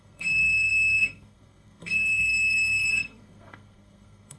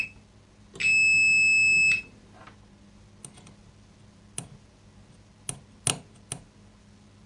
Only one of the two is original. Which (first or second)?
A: second